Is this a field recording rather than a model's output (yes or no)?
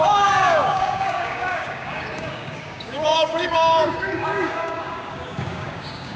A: no